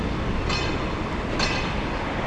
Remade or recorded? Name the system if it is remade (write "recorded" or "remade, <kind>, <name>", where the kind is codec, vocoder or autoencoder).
recorded